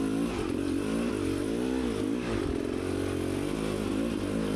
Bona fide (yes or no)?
yes